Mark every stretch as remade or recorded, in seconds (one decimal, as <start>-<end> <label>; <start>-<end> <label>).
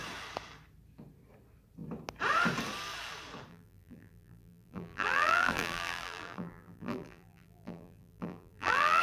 0.0-3.5 recorded; 3.5-9.0 remade